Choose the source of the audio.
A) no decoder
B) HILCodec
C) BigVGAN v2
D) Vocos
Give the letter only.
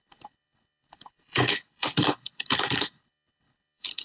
B